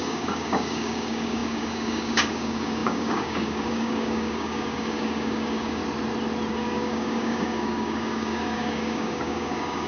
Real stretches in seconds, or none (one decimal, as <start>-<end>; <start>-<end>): 5.8-6.5